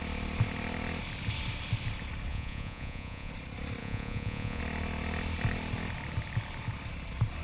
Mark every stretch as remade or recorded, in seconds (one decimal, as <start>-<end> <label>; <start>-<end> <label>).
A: 0.0-2.3 recorded; 2.3-3.3 remade; 3.3-3.8 recorded; 3.8-4.6 remade; 4.6-7.4 recorded